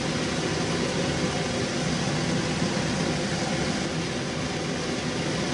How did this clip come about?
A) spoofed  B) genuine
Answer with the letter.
B